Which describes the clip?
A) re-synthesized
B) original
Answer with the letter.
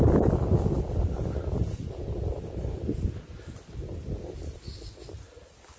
B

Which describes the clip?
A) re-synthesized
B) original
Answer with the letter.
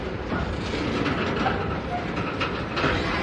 B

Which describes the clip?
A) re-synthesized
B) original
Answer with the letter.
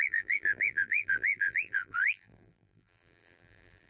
A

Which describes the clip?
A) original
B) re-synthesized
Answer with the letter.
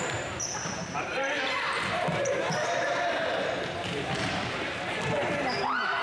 B